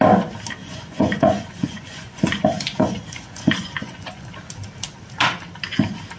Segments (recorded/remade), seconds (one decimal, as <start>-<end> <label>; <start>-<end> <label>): 0.0-0.6 recorded; 0.6-4.3 remade; 4.3-6.2 recorded